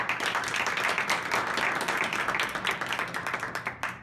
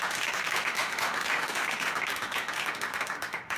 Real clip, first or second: first